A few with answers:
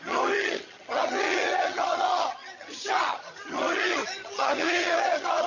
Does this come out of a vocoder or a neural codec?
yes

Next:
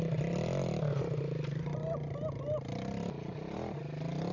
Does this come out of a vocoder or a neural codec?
no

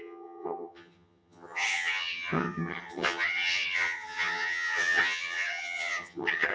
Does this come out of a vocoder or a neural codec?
yes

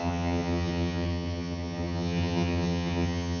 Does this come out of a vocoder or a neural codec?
yes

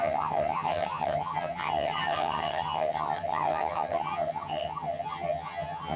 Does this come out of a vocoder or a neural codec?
yes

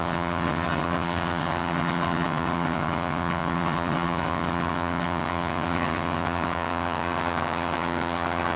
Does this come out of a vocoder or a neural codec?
yes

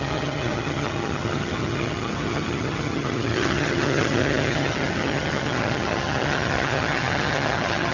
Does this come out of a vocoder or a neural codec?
yes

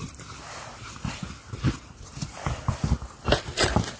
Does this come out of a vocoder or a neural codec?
no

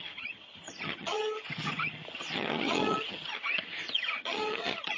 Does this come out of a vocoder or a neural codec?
yes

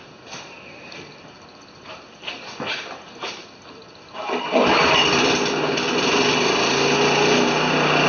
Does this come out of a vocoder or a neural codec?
no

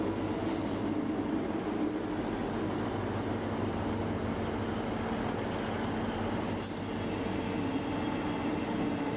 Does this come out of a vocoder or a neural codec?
no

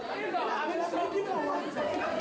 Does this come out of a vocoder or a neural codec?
no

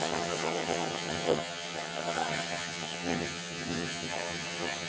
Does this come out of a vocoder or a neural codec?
yes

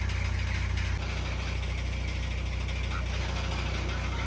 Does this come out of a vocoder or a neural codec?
no